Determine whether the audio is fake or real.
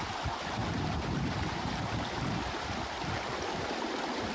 fake